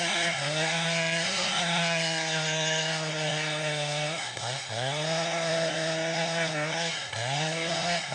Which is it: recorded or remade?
remade